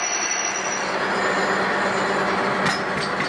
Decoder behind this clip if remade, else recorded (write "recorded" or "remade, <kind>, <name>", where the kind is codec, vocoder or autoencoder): recorded